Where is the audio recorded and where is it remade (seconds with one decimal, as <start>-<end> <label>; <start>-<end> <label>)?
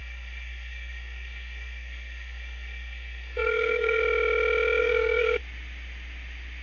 0.0-4.0 remade; 4.0-4.8 recorded; 4.8-5.4 remade; 5.4-6.6 recorded